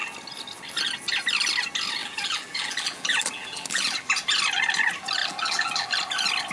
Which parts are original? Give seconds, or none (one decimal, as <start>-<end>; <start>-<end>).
0.0-2.0; 4.2-5.2; 6.0-6.5